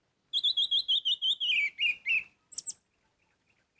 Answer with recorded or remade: recorded